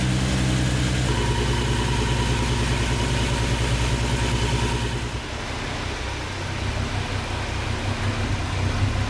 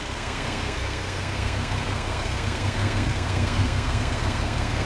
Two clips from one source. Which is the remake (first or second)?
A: second